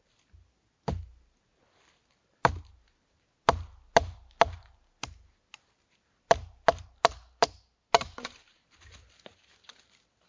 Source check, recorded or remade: recorded